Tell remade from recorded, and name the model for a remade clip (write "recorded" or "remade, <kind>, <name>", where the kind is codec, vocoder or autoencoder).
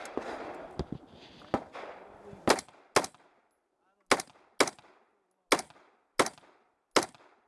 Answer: recorded